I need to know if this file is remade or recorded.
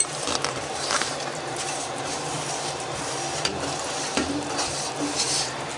remade